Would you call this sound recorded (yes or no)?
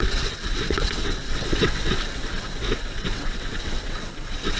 no